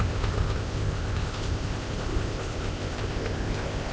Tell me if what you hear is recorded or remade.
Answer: remade